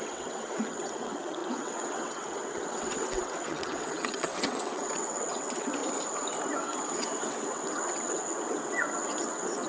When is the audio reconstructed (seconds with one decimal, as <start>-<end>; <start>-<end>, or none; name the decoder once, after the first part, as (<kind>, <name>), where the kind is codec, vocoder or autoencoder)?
0.0-5.8 (vocoder, WaveNeXt); 6.5-9.7